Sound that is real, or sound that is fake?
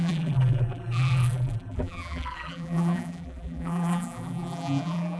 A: fake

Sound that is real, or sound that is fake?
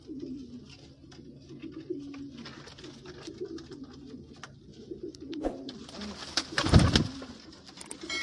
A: real